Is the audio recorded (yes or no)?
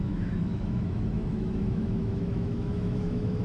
no